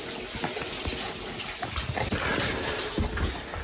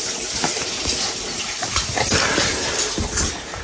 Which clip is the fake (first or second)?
second